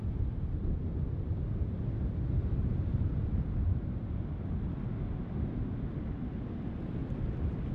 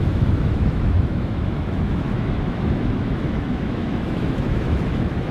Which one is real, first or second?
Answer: first